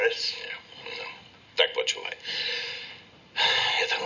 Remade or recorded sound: recorded